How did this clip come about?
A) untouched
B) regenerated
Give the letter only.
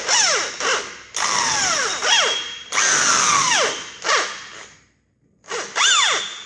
A